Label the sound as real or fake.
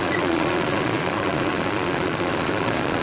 fake